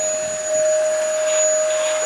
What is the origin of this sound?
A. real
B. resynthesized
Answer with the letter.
A